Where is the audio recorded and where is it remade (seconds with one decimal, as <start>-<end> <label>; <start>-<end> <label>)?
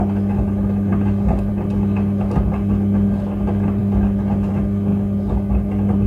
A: 0.0-6.1 recorded